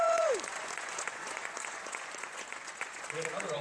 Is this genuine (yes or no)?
no